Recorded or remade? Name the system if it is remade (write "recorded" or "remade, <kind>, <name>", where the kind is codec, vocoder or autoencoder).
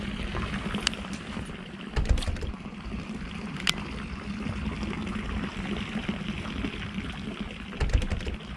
remade, vocoder, BigVGAN v2